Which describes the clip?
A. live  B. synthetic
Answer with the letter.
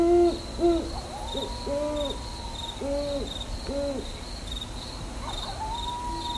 A